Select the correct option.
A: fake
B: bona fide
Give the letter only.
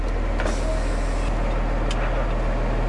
B